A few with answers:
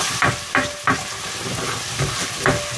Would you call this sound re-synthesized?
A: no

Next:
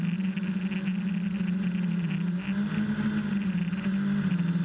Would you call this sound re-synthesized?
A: no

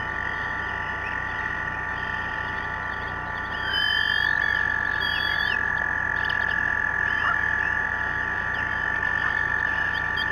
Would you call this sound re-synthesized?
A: no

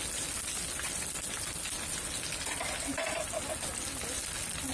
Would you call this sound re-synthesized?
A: no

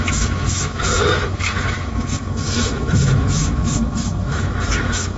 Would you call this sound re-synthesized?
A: yes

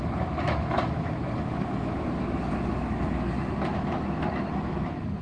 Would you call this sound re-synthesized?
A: yes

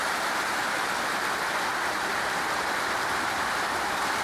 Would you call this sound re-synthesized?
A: no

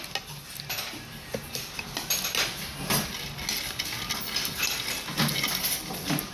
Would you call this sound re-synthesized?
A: no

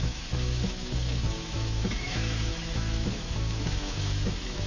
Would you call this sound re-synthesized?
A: yes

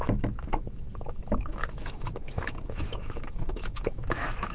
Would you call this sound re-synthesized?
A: yes